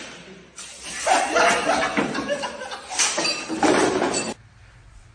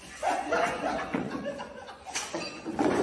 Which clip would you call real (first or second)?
first